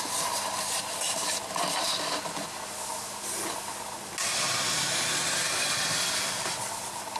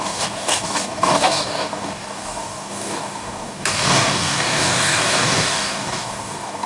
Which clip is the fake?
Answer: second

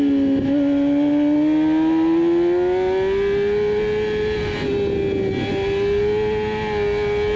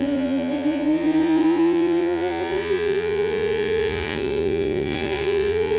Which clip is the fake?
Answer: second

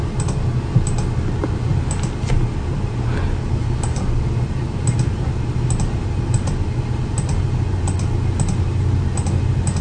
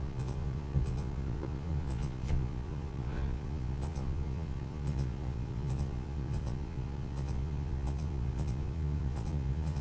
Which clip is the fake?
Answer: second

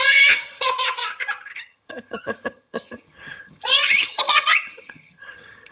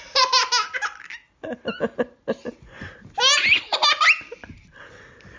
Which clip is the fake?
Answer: first